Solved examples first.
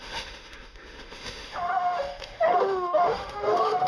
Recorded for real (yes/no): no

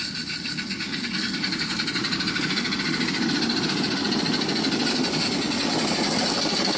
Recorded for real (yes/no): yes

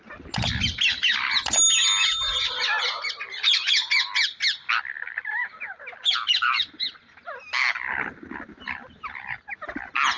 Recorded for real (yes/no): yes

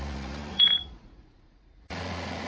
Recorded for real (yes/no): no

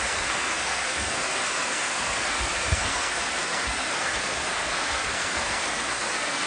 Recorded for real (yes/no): no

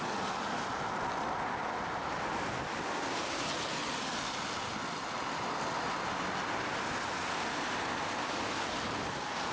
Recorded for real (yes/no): yes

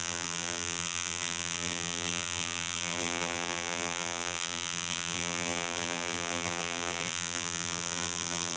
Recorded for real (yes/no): no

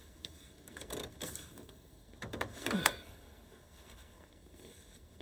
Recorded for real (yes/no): no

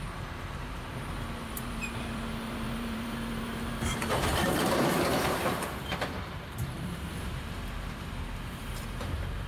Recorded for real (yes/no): no